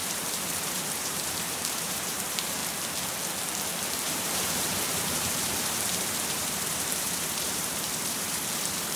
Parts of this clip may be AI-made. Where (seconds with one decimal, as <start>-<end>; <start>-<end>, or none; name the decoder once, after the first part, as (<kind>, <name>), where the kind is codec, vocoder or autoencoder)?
0.0-2.6 (vocoder, BigVGAN v2); 3.9-9.0